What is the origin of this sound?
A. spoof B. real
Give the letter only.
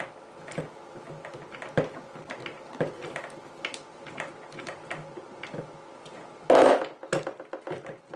B